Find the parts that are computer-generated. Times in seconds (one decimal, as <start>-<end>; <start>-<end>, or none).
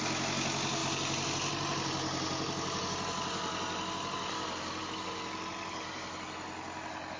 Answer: none